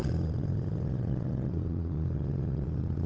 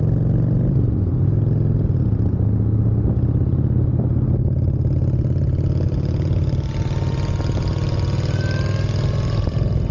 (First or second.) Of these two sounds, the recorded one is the second